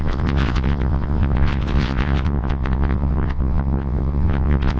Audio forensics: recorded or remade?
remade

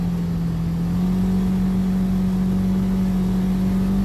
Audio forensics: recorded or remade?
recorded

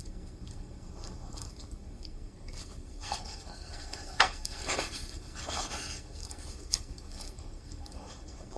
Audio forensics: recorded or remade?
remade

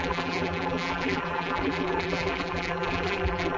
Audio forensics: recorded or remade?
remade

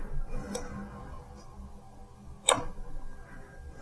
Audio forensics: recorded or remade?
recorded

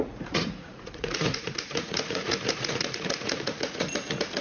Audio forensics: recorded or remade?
remade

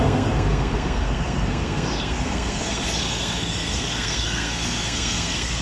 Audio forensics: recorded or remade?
remade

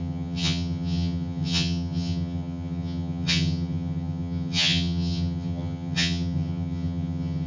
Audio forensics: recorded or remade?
remade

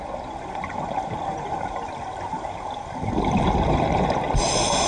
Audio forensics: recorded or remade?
recorded